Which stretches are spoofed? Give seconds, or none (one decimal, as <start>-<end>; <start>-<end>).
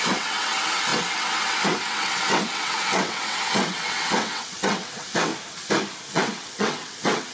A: 0.0-5.3; 6.1-7.3